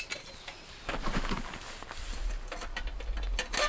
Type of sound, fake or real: real